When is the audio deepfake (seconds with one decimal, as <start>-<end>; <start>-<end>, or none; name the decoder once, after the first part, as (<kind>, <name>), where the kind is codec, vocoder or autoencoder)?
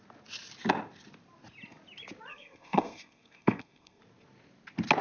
2.3-4.0 (codec, SNAC)